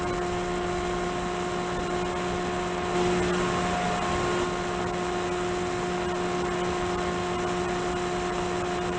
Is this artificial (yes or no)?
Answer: no